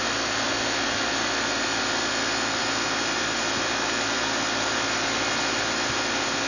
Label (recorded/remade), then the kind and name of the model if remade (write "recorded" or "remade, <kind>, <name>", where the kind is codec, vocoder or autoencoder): recorded